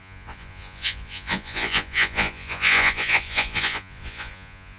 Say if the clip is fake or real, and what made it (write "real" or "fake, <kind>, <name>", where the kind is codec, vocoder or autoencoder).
fake, vocoder, Vocos